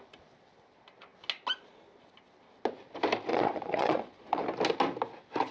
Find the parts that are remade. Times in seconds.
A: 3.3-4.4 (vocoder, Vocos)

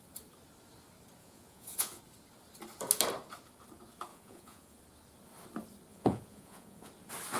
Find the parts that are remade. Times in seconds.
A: 1.2-2.0 (vocoder, Vocos); 4.1-4.8; 5.9-6.9

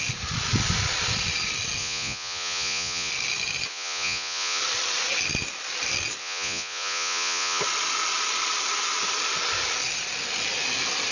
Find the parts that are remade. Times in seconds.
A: 1.8-3.1 (vocoder, Vocos); 3.7-4.6; 6.2-7.6

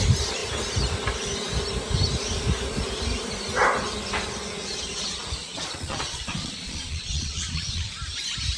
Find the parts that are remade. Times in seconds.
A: 5.4-7.9 (vocoder, Vocos)

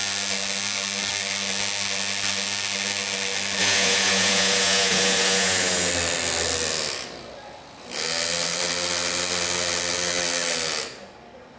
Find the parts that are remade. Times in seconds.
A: 3.6-5.9 (vocoder, Vocos)